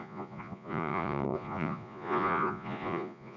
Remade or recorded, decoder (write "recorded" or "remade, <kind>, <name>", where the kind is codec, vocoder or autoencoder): remade, vocoder, Vocos